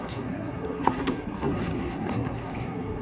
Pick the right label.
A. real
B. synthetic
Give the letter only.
B